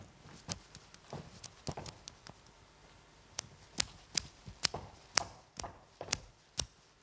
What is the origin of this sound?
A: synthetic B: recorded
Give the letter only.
B